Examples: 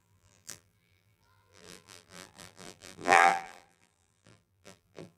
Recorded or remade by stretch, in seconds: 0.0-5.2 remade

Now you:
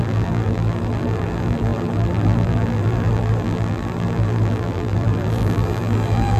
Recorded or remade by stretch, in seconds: 0.0-6.4 remade

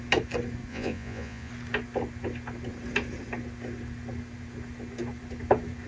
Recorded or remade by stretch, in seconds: 0.0-0.7 recorded; 0.7-1.5 remade; 1.5-5.9 recorded